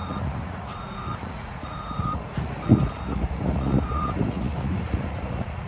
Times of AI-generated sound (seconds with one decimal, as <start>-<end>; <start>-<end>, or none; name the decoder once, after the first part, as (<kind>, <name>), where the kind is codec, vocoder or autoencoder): 0.0-5.7 (vocoder, Vocos)